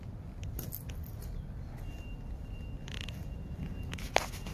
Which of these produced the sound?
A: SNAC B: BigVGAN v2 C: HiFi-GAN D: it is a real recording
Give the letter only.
D